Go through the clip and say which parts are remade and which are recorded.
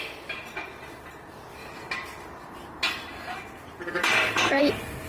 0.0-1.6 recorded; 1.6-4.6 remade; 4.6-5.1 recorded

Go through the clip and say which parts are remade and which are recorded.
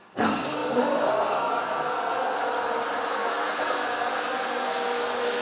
0.0-2.4 remade; 2.4-3.1 recorded; 3.1-5.4 remade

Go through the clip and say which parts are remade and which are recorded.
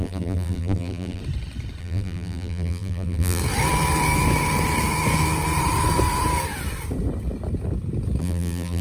0.0-1.2 remade; 1.2-1.8 recorded; 1.8-3.4 remade; 3.4-8.2 recorded; 8.2-8.8 remade